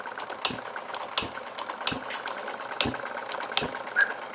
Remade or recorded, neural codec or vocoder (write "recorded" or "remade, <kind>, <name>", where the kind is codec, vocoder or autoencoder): recorded